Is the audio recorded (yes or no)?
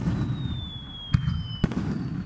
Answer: yes